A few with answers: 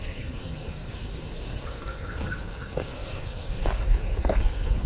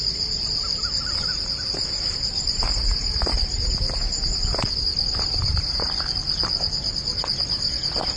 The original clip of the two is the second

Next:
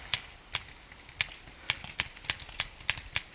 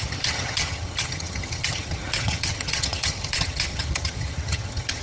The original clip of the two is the first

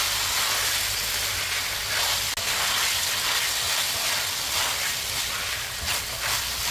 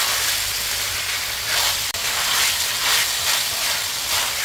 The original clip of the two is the first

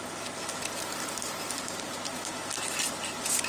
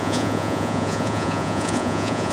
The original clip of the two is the first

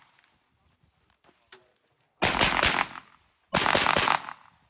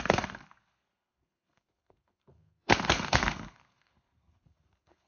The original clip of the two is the first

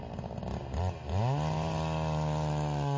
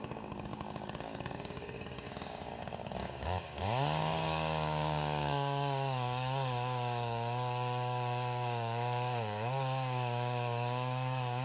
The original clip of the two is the first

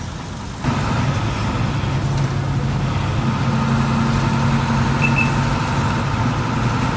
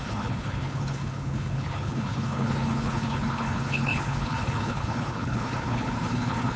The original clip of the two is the first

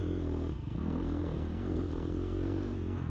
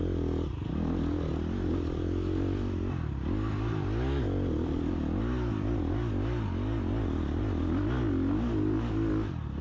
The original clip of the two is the second